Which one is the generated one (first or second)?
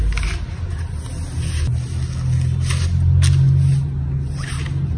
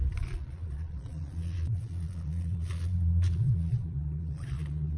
second